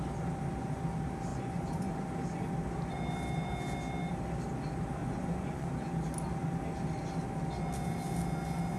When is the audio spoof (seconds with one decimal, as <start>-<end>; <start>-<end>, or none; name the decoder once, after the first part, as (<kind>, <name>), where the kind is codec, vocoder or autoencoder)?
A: 1.3-1.9 (vocoder, Vocos); 5.0-5.7